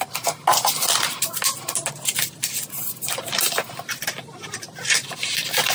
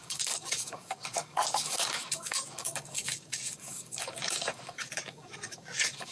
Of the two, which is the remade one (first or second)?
second